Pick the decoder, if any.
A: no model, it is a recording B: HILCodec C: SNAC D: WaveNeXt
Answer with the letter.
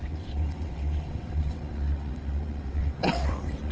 D